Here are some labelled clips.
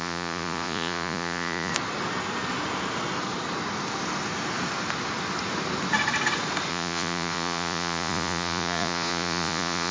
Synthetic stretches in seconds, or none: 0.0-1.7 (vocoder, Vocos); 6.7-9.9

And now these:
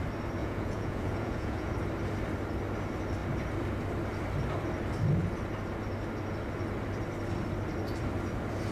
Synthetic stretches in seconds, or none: 0.4-1.7 (vocoder, Vocos)

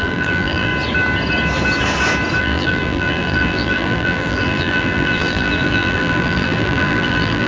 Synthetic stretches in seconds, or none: 0.0-0.7 (vocoder, BigVGAN v2); 2.4-7.5

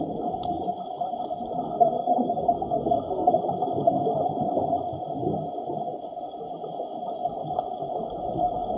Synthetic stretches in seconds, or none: 1.6-3.3 (codec, SNAC)

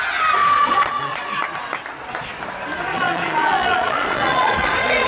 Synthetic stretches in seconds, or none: 0.4-1.3 (vocoder, Vocos); 1.9-2.4; 2.9-5.1

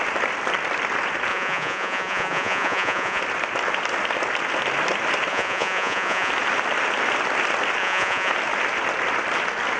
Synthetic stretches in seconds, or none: 1.3-3.2 (vocoder, Vocos); 5.3-6.3; 7.8-8.3